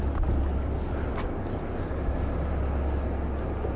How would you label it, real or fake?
real